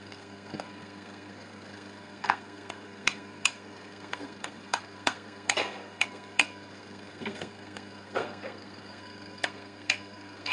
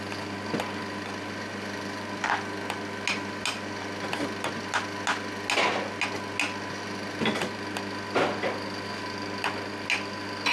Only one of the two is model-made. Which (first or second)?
first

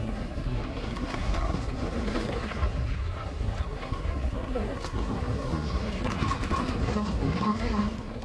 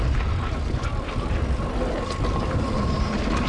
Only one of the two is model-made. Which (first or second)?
first